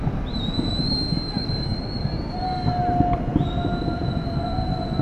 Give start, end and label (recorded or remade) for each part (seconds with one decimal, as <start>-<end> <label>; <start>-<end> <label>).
0.0-5.0 recorded